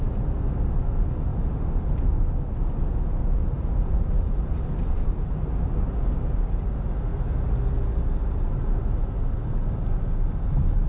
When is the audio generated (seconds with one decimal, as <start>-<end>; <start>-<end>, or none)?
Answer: 3.4-6.6